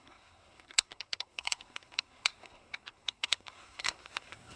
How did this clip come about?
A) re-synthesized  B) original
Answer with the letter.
A